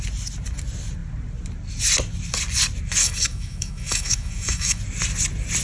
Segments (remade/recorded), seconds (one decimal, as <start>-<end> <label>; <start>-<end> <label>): 0.0-3.0 recorded; 3.0-4.8 remade; 4.8-5.6 recorded